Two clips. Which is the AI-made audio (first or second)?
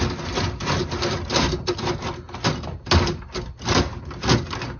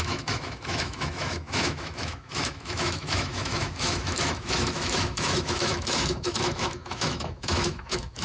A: second